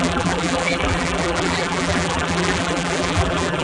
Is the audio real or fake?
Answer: fake